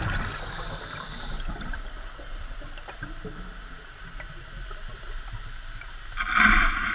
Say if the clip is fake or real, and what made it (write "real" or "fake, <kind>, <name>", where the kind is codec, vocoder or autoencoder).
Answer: real